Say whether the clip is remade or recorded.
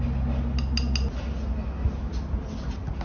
recorded